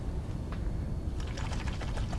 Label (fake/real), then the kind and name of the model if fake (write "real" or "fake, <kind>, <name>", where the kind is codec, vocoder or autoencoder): fake, vocoder, BigVGAN v2